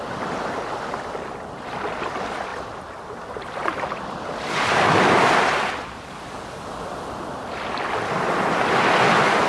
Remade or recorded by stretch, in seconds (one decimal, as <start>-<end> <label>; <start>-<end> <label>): 0.0-9.5 recorded

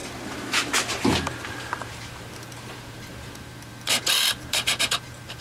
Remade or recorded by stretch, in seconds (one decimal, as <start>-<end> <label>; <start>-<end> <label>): 0.0-1.9 recorded; 1.9-5.4 remade

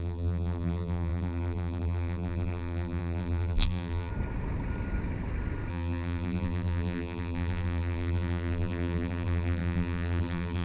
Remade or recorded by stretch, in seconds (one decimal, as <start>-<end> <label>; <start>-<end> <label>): 0.0-4.1 remade; 4.1-5.7 recorded; 5.7-10.6 remade

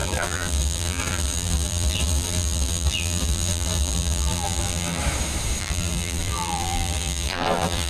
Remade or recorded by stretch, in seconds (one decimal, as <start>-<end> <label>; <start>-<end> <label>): 0.0-5.0 remade; 5.0-5.6 recorded; 5.6-7.9 remade

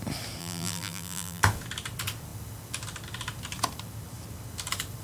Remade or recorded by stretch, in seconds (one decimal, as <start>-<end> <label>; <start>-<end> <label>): 0.0-0.4 recorded; 0.4-1.4 remade; 1.4-5.0 recorded

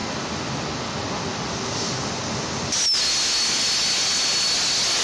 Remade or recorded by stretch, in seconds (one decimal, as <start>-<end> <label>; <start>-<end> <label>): 0.0-5.0 recorded

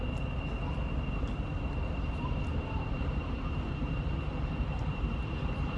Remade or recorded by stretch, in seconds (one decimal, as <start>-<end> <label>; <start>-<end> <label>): 0.0-2.5 recorded; 2.5-5.8 remade